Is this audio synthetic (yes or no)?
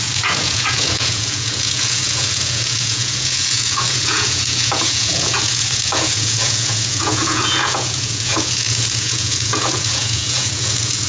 yes